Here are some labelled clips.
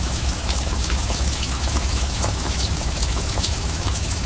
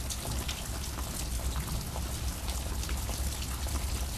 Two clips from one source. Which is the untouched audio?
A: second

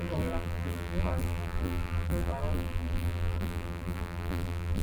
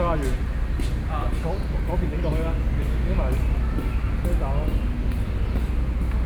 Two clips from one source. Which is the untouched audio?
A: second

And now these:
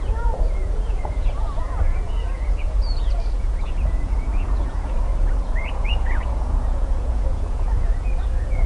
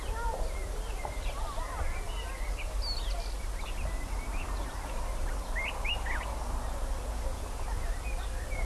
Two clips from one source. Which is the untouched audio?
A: second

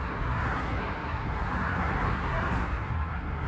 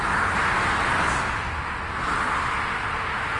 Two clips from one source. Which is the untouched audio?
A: second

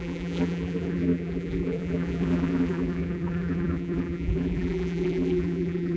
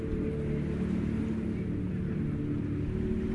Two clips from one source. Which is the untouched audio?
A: second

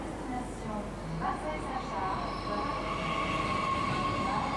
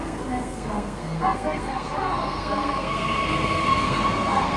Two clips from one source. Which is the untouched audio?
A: first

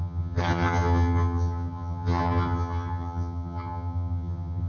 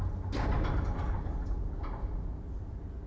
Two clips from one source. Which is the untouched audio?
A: second